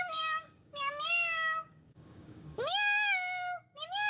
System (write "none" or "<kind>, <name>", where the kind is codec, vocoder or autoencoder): codec, DAC